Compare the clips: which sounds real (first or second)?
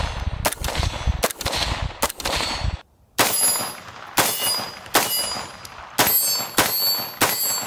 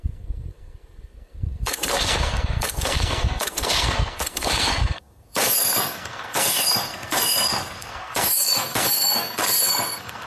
first